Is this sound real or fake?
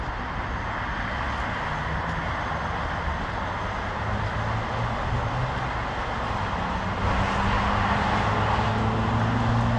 real